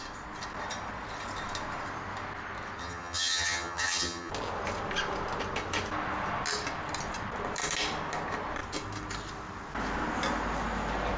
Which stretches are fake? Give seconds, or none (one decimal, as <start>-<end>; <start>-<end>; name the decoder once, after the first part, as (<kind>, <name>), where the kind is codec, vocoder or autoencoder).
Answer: 2.8-4.3 (vocoder, HiFi-GAN)